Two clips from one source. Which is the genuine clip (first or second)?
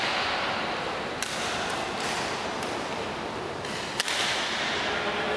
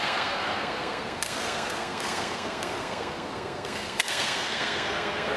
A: first